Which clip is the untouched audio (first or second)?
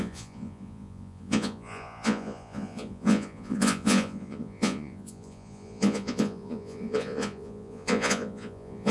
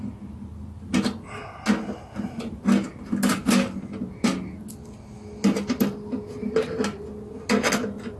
second